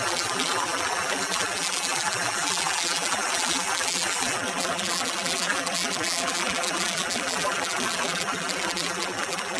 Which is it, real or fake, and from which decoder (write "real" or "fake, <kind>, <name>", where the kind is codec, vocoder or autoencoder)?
fake, vocoder, BigVGAN v2